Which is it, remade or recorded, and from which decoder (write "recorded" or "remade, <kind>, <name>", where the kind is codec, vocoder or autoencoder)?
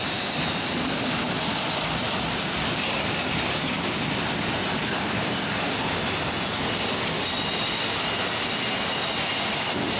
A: recorded